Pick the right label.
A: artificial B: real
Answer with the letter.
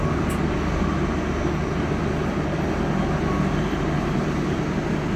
B